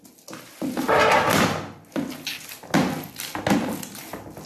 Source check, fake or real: real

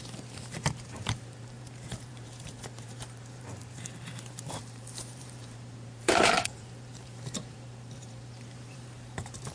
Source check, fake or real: fake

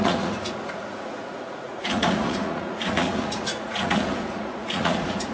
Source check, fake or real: fake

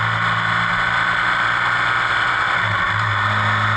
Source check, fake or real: real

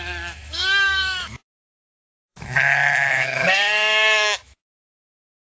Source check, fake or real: fake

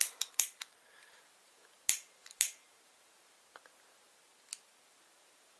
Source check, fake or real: fake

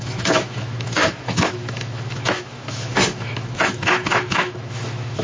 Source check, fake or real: fake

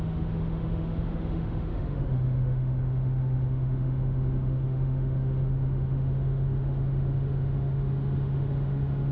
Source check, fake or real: fake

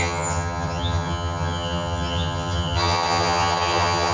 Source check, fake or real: fake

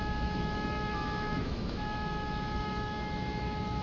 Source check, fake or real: fake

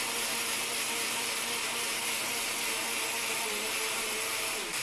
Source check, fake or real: fake